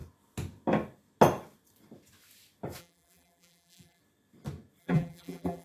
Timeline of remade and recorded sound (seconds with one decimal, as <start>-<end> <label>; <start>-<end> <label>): 0.0-2.8 recorded; 2.8-4.0 remade; 4.0-4.8 recorded; 4.8-5.6 remade

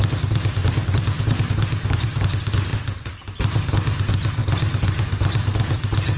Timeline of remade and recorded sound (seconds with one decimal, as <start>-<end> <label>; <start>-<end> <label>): 0.0-0.6 recorded; 0.6-2.3 remade; 2.3-2.7 recorded; 2.7-3.7 remade; 3.7-6.2 recorded

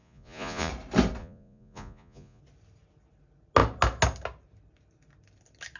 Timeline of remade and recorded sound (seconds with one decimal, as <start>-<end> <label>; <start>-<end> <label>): 0.0-0.7 remade; 0.7-1.2 recorded; 1.2-2.4 remade; 2.4-5.8 recorded